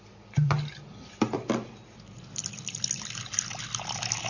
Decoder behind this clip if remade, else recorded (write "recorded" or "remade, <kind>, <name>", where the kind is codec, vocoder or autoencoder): recorded